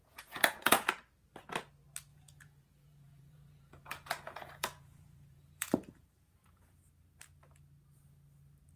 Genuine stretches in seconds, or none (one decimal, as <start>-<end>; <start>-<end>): 0.9-2.1; 6.8-8.8